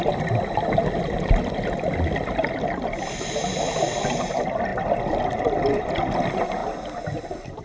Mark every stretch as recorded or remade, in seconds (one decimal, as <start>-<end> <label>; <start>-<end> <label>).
0.0-7.6 recorded